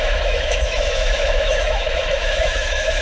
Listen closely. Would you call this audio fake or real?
fake